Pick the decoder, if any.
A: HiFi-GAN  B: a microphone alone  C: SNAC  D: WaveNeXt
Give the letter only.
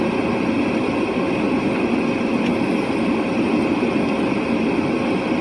B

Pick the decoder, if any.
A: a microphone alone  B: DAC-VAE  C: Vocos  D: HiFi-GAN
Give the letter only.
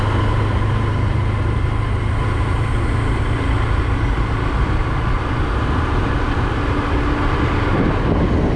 A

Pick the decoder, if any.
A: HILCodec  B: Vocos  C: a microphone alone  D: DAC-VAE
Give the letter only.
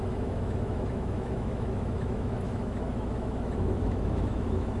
D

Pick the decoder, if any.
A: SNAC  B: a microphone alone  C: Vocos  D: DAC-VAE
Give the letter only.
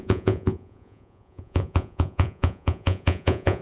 C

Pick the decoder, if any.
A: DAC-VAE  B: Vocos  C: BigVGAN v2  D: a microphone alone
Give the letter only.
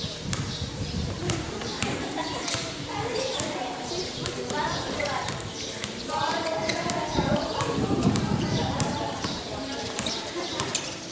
C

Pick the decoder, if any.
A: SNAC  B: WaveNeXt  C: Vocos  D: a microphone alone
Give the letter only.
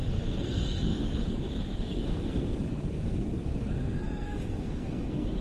A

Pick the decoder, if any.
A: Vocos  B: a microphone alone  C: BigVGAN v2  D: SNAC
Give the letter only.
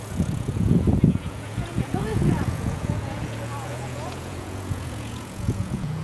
A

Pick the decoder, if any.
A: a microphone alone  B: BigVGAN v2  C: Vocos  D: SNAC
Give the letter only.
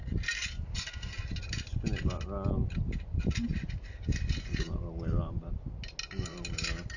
A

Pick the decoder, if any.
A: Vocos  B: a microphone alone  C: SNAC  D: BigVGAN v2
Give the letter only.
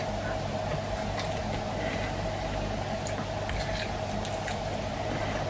B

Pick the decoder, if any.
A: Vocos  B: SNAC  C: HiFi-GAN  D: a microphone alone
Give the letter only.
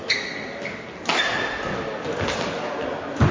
D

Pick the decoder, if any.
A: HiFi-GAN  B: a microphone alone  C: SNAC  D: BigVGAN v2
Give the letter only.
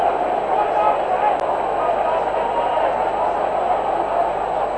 B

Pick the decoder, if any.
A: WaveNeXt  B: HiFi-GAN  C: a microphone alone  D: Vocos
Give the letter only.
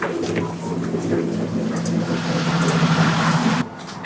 C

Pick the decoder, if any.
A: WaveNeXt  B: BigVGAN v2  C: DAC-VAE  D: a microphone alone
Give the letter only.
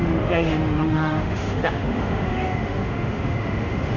C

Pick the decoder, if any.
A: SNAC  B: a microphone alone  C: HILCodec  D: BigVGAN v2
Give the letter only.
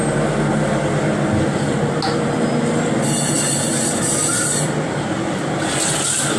B